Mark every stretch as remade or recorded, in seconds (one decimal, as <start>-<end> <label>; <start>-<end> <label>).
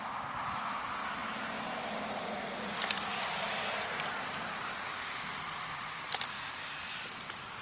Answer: 0.0-7.6 recorded